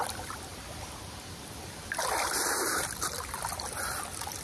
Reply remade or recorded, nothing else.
remade